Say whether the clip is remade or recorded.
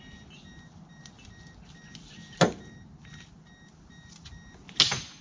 recorded